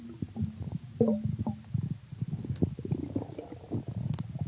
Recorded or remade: recorded